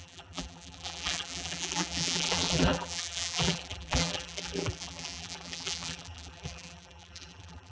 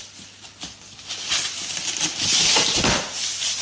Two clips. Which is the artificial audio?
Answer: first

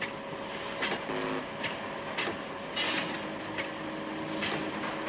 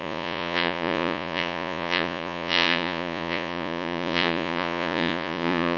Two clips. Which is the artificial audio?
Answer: second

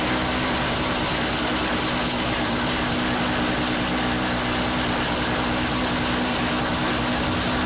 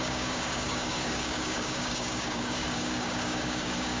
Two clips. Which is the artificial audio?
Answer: second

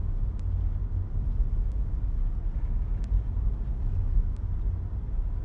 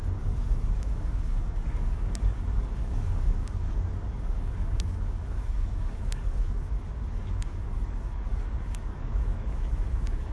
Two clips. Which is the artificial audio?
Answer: second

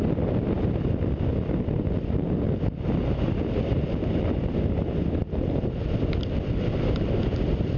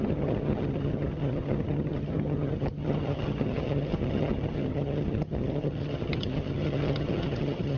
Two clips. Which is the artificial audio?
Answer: second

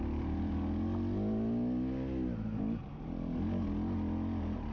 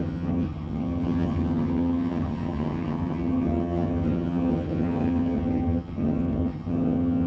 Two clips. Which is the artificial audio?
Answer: second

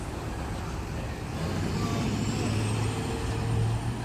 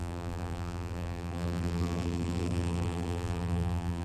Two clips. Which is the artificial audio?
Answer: second